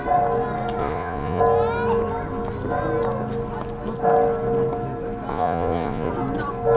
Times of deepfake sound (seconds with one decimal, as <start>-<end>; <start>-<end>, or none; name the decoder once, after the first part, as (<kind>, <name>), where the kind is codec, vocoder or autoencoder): 0.8-1.4 (vocoder, Vocos); 5.3-6.1